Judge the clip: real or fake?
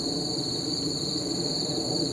fake